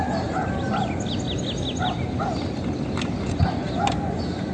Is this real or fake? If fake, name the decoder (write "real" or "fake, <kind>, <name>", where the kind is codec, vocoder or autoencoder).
real